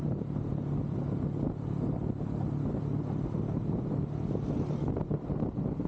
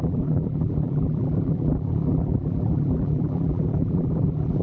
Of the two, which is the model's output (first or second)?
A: second